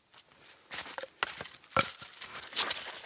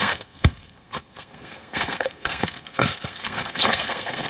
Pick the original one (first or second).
first